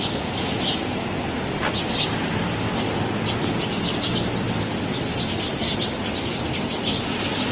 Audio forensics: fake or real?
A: real